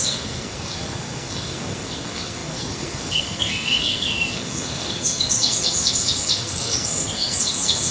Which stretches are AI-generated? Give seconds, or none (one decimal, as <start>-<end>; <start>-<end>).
0.0-7.9